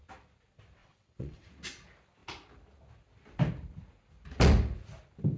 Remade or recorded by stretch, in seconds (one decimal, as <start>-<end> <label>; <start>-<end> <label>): 0.0-0.8 recorded; 0.8-1.5 remade; 1.5-5.4 recorded